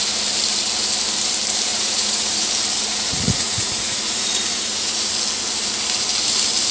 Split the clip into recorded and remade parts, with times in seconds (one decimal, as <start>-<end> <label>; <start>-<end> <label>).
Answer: 0.0-1.7 recorded; 1.7-2.5 remade; 2.5-2.9 recorded; 2.9-5.1 remade; 5.1-6.7 recorded